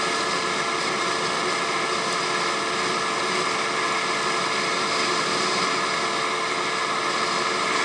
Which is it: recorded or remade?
recorded